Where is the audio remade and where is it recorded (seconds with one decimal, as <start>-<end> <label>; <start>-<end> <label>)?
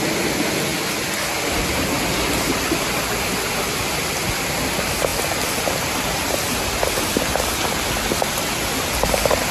0.0-9.5 recorded